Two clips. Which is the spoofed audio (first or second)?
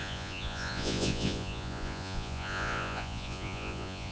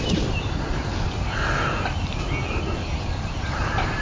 first